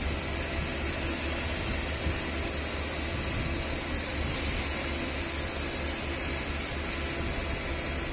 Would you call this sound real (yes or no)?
yes